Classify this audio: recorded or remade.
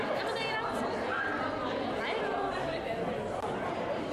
remade